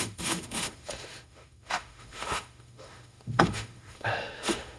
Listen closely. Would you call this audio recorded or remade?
remade